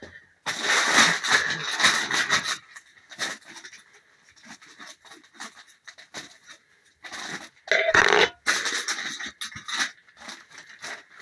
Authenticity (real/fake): real